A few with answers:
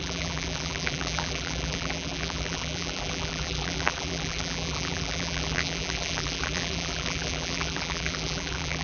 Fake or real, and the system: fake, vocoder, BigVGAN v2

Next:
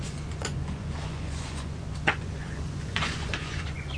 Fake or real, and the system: fake, vocoder, Vocos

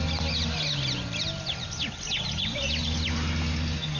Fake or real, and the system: real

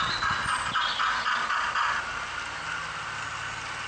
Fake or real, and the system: real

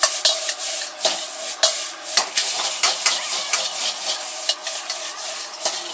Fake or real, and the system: real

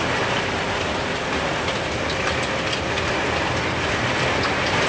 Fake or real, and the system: real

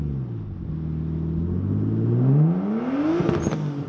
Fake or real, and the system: real